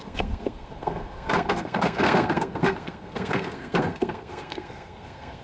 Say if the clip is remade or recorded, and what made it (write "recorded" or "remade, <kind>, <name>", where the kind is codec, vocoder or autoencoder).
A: remade, codec, SNAC